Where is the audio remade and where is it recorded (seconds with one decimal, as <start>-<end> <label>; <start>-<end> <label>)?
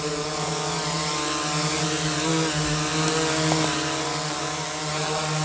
0.0-5.4 recorded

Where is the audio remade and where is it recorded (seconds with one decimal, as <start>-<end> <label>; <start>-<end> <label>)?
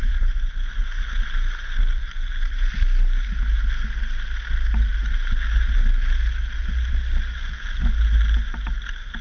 0.0-9.2 recorded